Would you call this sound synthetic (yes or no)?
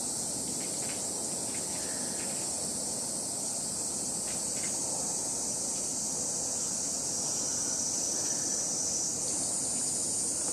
no